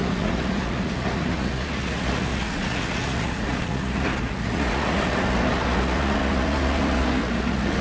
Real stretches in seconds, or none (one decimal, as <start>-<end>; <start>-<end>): none